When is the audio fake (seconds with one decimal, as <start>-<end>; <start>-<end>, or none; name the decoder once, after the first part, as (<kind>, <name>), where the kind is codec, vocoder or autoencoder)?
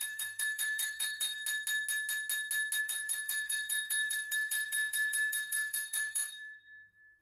0.0-1.4 (codec, SNAC); 2.8-7.2